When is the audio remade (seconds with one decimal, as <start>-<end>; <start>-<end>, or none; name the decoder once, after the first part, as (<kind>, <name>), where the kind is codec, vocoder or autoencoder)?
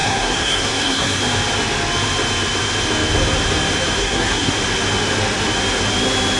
0.0-1.2 (codec, SNAC); 4.0-4.5